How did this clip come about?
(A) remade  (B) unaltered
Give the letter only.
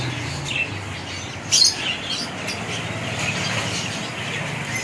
B